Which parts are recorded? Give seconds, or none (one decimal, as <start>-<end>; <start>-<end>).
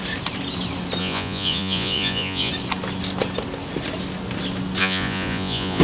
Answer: 0.0-1.0; 2.5-4.8